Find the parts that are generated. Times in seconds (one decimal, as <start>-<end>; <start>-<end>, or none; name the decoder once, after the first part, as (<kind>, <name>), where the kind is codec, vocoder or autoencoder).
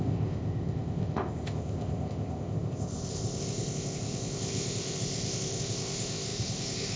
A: 0.0-7.0 (codec, ZipCodec)